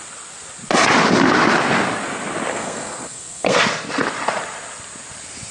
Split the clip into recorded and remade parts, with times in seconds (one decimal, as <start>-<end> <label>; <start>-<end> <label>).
0.0-2.5 recorded; 2.5-3.6 remade; 3.6-5.5 recorded